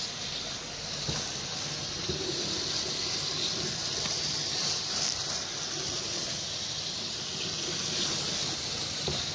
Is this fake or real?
real